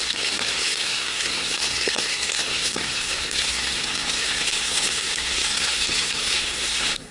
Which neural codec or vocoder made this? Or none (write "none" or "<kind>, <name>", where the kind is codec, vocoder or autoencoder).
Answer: codec, SNAC